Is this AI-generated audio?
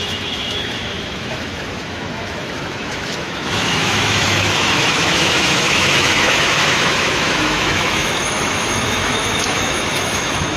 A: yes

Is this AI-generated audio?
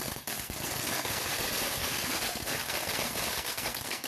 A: yes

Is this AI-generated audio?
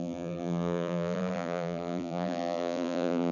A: yes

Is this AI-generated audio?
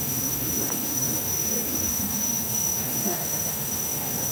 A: yes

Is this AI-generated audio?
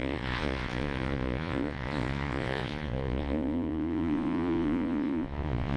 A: yes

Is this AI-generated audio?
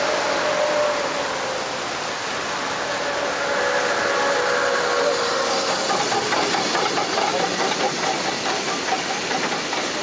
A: no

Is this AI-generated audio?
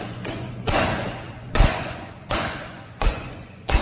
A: yes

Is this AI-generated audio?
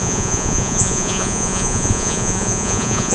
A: yes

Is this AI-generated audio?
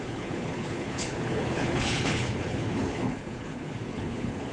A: yes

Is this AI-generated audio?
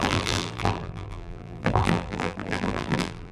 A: yes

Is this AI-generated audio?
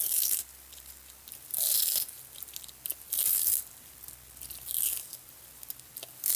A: no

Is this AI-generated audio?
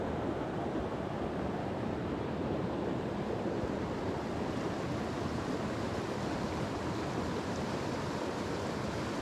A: no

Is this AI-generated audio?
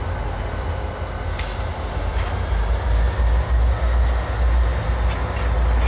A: no